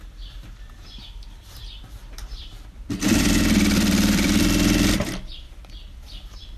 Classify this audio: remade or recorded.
remade